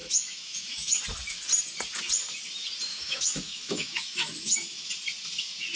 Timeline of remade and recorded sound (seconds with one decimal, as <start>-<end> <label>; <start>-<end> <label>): 0.0-1.0 remade; 1.0-2.9 recorded; 2.9-4.9 remade; 4.9-5.8 recorded

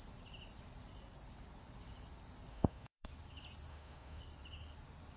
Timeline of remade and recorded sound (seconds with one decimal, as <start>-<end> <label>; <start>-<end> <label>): 0.0-2.5 recorded; 2.5-3.1 remade; 3.1-3.7 recorded; 3.7-4.2 remade; 4.2-5.2 recorded

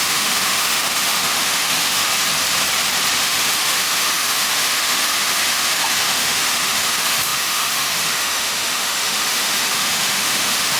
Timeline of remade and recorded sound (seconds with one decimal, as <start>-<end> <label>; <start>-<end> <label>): 0.0-2.1 remade; 2.1-3.2 recorded; 3.2-10.8 remade

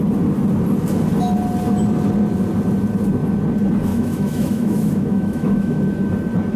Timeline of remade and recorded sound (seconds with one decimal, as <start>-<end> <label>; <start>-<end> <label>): 0.0-3.9 recorded; 3.9-5.8 remade; 5.8-6.6 recorded

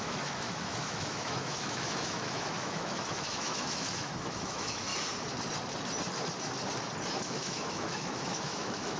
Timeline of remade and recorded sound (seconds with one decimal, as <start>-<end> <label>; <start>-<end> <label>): 0.0-4.9 remade; 4.9-7.1 recorded; 7.1-9.0 remade

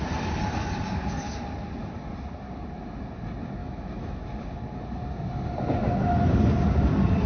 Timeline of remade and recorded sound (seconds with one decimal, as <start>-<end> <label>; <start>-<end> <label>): 0.0-3.6 recorded; 3.6-4.2 remade; 4.2-7.3 recorded